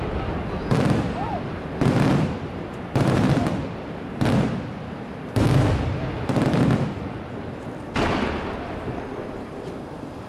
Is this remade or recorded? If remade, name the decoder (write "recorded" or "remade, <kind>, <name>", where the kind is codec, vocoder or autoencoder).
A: recorded